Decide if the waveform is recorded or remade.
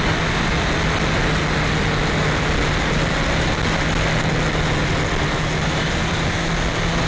recorded